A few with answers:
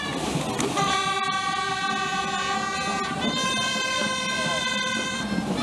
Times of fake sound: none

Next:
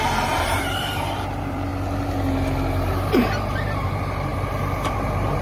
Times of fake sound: 0.0-1.7 (vocoder, BigVGAN v2); 3.4-4.3

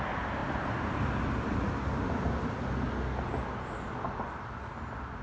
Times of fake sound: none

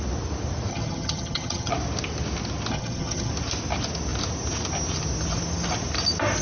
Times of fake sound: 0.7-1.7 (vocoder, HiFi-GAN); 2.7-3.3